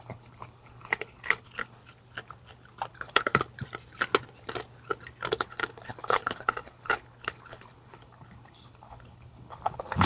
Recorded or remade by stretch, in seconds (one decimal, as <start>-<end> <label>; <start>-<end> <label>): 0.0-1.8 remade; 1.8-2.9 recorded; 2.9-3.3 remade; 3.3-5.4 recorded; 5.4-10.1 remade